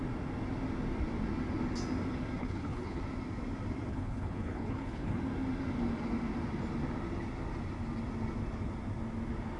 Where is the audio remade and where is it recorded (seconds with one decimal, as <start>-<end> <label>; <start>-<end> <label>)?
0.0-2.4 recorded; 2.4-3.0 remade; 3.0-3.9 recorded; 3.9-5.2 remade; 5.2-9.6 recorded